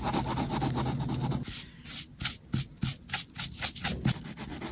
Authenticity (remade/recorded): recorded